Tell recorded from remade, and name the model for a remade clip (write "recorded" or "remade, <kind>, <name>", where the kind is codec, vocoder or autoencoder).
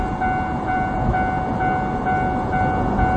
recorded